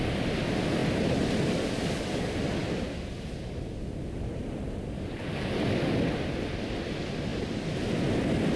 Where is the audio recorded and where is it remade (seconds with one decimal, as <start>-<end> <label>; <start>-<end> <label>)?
0.0-8.6 recorded